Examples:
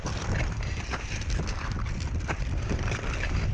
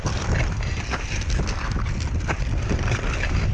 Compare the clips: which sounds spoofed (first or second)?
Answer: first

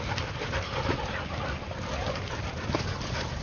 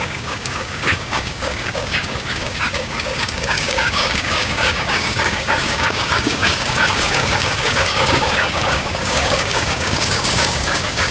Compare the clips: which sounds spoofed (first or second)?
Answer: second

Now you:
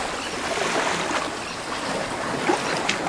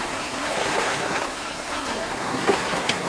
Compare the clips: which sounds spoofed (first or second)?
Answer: second